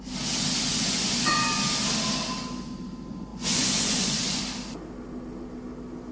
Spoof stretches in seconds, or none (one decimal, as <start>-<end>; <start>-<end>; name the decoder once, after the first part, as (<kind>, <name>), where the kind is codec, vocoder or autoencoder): 0.7-1.6 (vocoder, Vocos); 3.3-4.4